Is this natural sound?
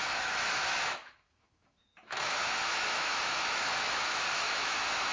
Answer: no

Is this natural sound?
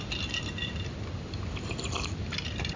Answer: yes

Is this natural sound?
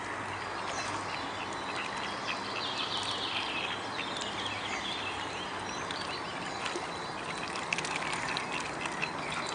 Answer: yes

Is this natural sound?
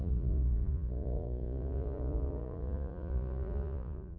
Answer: no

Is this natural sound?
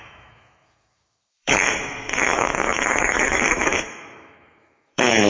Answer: no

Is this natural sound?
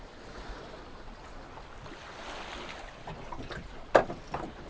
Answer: yes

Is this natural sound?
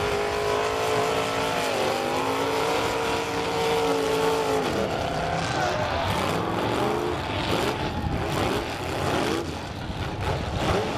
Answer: yes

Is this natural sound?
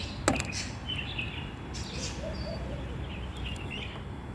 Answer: yes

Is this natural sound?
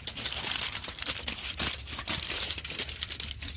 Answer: yes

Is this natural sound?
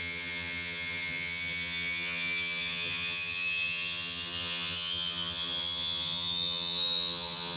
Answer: no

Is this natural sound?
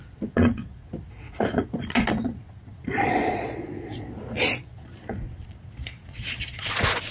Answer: no